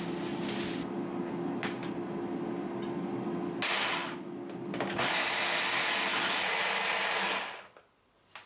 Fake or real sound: real